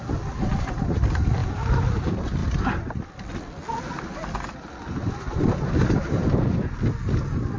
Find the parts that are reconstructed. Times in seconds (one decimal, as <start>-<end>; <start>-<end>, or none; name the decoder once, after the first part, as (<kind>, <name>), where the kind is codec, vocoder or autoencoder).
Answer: none